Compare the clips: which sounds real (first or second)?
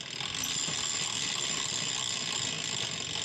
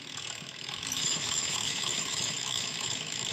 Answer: first